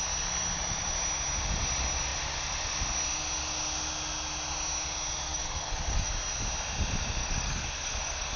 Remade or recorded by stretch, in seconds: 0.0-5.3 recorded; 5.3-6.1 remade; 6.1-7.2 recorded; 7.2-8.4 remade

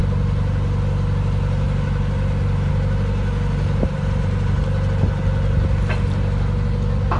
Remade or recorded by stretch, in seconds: 0.0-7.2 recorded

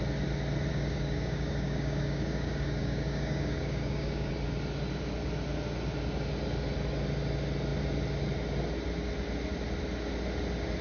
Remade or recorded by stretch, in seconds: 0.0-0.7 recorded; 0.7-4.3 remade; 4.3-10.8 recorded

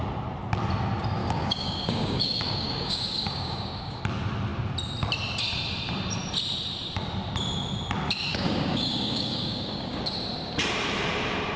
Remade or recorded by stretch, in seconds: 0.0-1.2 recorded; 1.2-4.0 remade; 4.0-8.3 recorded; 8.3-10.0 remade; 10.0-11.6 recorded

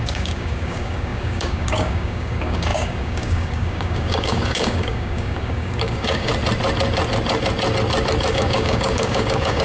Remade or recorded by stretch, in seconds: 0.0-6.3 remade; 6.3-8.3 recorded; 8.3-9.6 remade

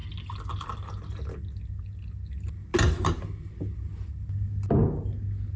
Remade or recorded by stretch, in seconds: 0.0-5.6 recorded